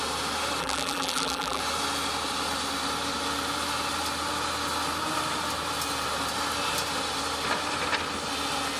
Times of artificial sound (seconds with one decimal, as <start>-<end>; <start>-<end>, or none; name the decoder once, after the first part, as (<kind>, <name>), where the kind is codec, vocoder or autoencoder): 0.6-1.6 (vocoder, BigVGAN v2)